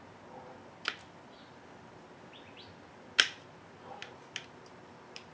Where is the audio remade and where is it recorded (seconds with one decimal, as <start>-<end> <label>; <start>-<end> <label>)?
0.0-5.3 recorded